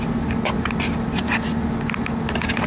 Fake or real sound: real